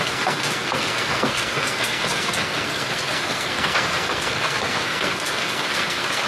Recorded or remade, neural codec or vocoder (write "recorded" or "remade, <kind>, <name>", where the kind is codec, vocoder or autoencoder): remade, codec, SNAC